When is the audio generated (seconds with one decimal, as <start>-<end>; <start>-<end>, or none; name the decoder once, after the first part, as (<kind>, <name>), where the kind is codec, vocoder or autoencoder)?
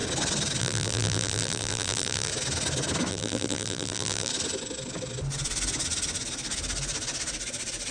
0.6-2.3 (vocoder, BigVGAN v2); 3.1-4.3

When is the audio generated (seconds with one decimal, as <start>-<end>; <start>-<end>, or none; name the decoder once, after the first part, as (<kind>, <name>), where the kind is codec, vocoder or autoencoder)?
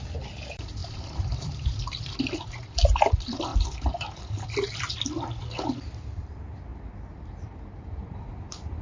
0.0-8.8 (vocoder, BigVGAN v2)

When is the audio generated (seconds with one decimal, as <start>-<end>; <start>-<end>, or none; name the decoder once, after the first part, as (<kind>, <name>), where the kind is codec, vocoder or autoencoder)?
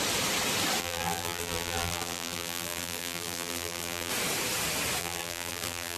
0.8-4.1 (vocoder, BigVGAN v2); 5.0-6.0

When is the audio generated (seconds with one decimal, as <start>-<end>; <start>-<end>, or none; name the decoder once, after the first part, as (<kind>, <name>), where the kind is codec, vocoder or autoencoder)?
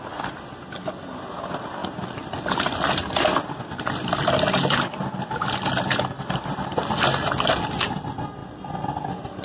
1.8-4.7 (vocoder, BigVGAN v2); 8.4-9.4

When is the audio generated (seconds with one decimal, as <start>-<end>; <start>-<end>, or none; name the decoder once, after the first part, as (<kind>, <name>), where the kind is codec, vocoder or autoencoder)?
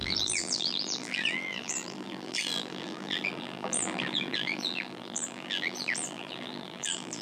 0.0-7.2 (vocoder, BigVGAN v2)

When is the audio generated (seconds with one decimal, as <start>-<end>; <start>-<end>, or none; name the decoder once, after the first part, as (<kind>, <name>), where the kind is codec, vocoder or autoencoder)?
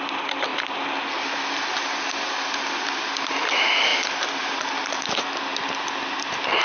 none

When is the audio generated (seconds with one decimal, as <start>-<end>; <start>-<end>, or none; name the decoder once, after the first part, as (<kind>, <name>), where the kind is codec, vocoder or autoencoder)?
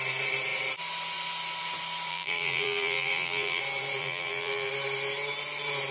2.1-3.6 (vocoder, BigVGAN v2); 4.0-4.7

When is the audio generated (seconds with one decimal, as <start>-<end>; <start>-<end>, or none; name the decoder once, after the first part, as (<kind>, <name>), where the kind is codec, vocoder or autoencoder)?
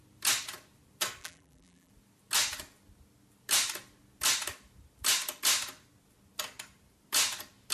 1.2-1.9 (vocoder, BigVGAN v2)